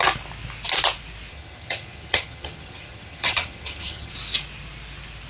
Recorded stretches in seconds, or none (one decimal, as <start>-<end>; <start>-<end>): 0.0-1.3; 4.1-5.3